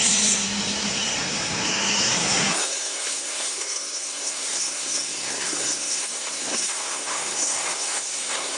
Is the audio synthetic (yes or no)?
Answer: yes